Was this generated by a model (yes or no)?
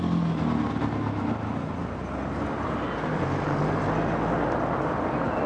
no